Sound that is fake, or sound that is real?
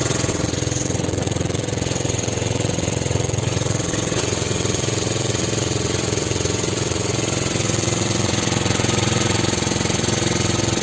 fake